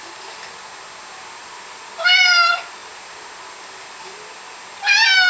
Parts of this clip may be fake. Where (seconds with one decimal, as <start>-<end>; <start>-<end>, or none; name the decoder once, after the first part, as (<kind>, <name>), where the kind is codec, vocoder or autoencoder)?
none